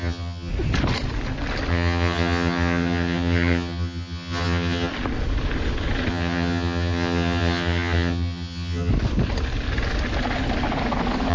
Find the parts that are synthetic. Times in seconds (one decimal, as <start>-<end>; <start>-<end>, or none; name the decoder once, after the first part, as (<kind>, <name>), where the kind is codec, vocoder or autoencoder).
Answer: 0.0-0.5 (vocoder, HiFi-GAN); 1.7-4.9; 6.1-8.9